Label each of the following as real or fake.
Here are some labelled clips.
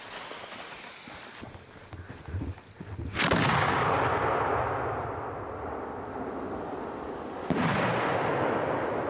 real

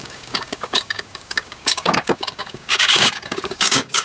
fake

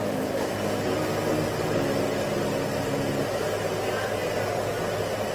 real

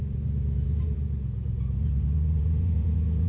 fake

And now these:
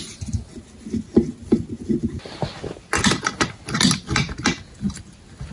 real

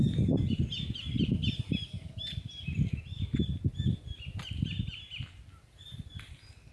real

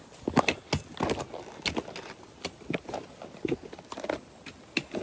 real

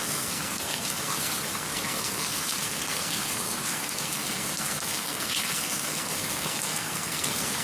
fake